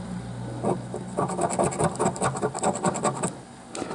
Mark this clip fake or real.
real